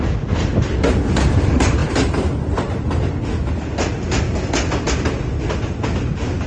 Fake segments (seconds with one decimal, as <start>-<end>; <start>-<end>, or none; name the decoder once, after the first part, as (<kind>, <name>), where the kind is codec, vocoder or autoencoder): none

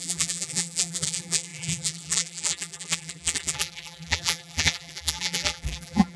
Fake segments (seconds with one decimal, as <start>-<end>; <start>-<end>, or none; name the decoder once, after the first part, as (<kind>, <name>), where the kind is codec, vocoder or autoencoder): 0.0-6.2 (vocoder, BigVGAN v2)

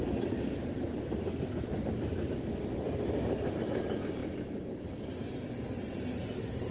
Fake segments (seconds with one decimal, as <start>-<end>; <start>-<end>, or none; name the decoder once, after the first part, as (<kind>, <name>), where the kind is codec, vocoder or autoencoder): 1.7-2.3 (vocoder, BigVGAN v2)